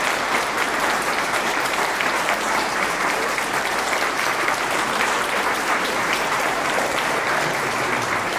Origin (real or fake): fake